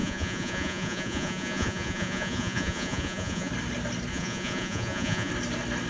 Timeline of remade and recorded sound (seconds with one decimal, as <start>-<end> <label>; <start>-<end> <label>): 0.0-3.5 remade; 3.5-4.1 recorded; 4.1-5.3 remade; 5.3-5.9 recorded